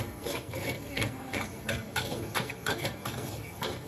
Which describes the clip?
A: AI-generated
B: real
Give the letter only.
A